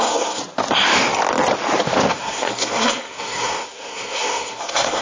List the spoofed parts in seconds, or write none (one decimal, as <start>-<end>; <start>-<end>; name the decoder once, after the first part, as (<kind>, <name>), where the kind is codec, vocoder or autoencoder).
0.0-0.4 (codec, SNAC); 2.1-5.0